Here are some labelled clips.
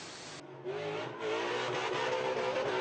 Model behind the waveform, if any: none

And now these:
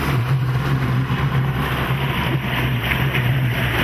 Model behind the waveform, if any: none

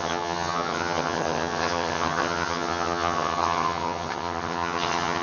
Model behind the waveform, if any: vocoder, HiFi-GAN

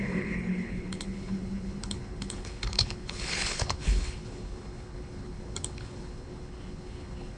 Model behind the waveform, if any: codec, HILCodec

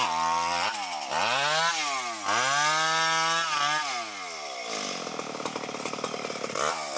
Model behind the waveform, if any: none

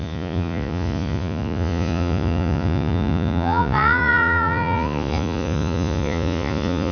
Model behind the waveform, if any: vocoder, Vocos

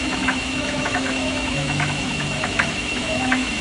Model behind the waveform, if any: autoencoder, DAC-VAE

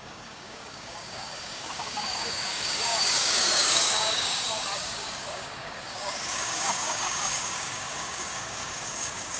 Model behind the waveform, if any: codec, DAC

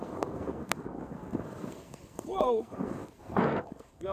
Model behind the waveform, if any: codec, SNAC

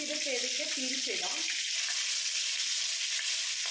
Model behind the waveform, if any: none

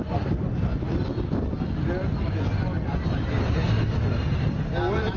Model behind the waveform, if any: none